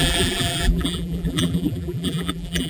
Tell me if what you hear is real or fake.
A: fake